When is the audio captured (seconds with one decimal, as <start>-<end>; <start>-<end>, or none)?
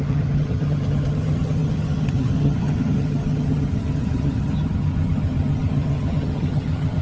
none